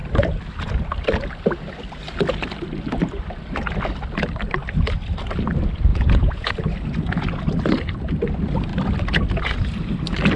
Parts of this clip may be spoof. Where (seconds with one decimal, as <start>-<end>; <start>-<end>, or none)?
5.9-6.5